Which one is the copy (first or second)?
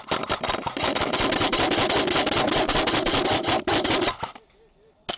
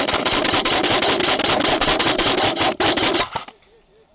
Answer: second